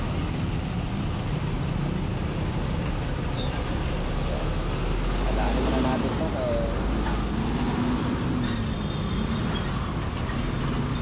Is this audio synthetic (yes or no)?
no